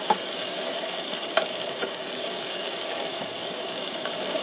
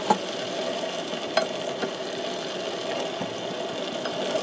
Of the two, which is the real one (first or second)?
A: second